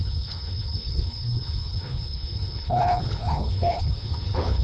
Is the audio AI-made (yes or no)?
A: yes